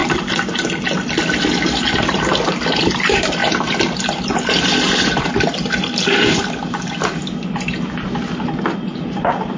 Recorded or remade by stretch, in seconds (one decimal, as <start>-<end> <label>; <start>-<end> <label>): 0.0-9.6 recorded